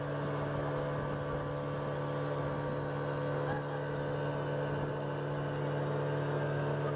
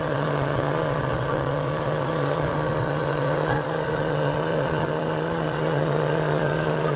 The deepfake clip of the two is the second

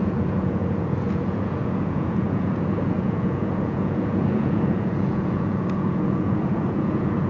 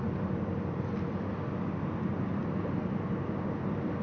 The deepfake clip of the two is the first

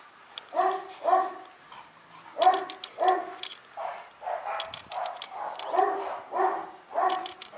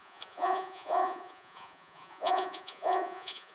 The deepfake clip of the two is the second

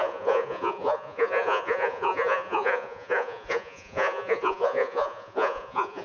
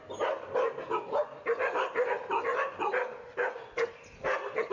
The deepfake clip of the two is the first